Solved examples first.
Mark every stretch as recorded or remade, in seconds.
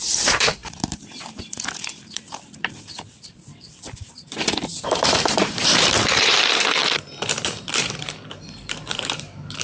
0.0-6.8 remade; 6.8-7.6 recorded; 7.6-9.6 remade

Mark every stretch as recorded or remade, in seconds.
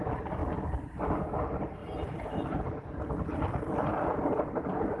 0.0-0.4 recorded; 0.4-0.9 remade; 0.9-1.8 recorded; 1.8-5.0 remade